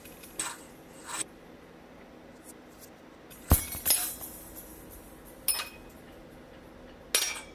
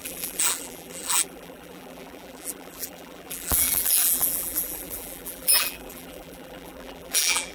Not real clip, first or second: second